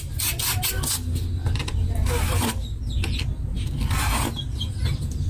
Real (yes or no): yes